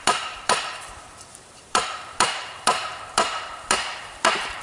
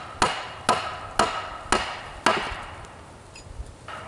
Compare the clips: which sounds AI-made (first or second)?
first